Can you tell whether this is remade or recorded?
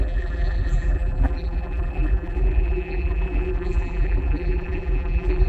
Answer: remade